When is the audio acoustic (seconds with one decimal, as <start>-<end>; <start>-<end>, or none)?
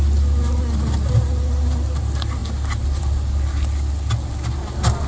0.0-5.1